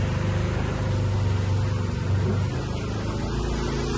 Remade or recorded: recorded